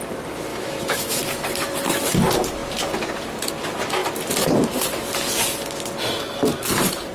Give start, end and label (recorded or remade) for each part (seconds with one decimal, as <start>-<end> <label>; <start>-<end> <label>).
0.0-0.5 recorded; 0.5-1.2 remade; 1.2-7.1 recorded